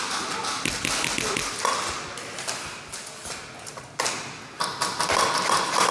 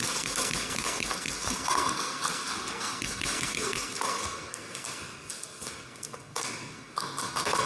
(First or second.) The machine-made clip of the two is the second